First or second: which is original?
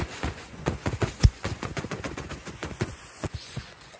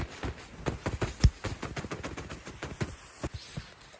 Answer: second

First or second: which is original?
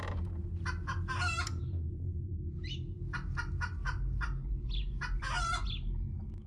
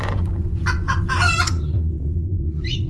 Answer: first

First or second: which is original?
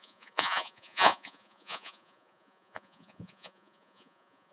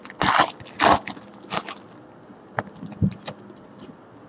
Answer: second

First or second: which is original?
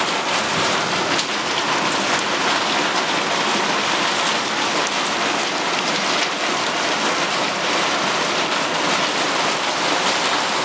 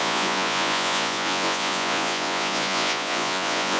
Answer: first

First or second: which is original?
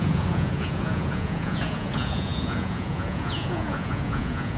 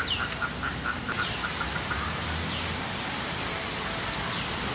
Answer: second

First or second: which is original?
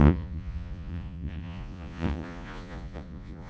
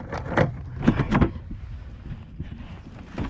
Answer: second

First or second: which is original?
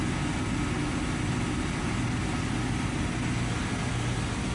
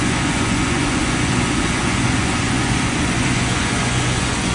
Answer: first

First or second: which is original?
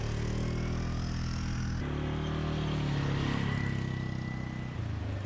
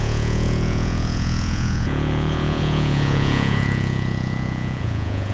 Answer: first